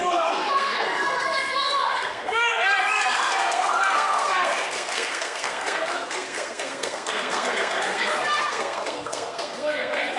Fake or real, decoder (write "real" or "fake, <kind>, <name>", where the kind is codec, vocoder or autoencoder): fake, codec, SNAC